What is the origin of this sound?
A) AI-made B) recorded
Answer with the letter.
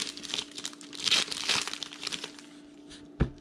B